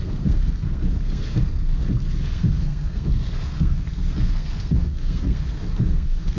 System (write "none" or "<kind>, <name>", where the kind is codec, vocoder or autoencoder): codec, SNAC